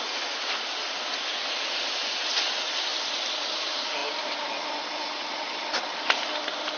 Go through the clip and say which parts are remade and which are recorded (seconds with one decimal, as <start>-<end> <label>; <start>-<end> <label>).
0.0-6.8 recorded